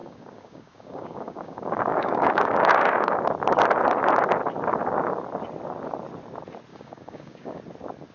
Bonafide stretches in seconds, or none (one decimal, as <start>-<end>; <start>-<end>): 3.2-6.7; 7.6-8.1